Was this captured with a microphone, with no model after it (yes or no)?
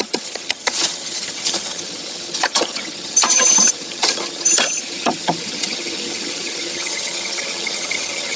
no